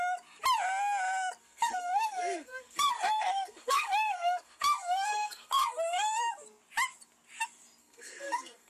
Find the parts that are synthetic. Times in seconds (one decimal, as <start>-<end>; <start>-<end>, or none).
1.4-6.2; 7.8-8.7